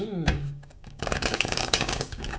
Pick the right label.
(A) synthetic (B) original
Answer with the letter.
A